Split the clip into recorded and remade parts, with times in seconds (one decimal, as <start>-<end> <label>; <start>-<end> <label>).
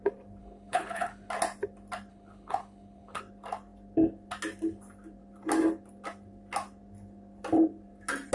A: 0.0-0.4 recorded; 0.4-1.3 remade; 1.3-2.1 recorded; 2.1-3.2 remade; 3.2-8.3 recorded